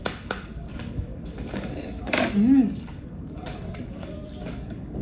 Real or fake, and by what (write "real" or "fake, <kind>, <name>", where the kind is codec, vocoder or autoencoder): fake, codec, DAC